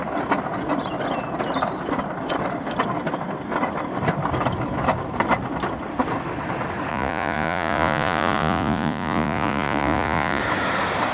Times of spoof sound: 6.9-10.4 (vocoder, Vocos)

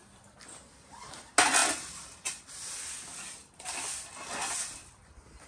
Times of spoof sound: none

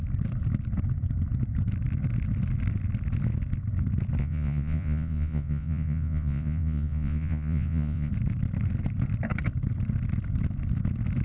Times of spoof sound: 4.2-8.1 (vocoder, Vocos)

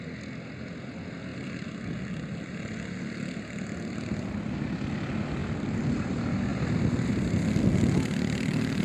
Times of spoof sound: 5.4-6.1 (vocoder, BigVGAN v2)

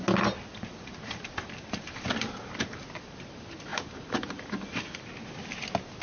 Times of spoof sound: 0.5-3.3 (vocoder, BigVGAN v2); 3.7-5.0

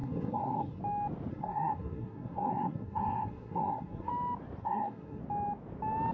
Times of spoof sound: 0.0-0.8 (codec, SNAC); 1.3-4.1; 4.6-5.2